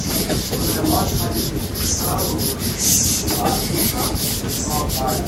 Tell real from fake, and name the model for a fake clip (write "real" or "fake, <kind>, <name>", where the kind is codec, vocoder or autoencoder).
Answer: real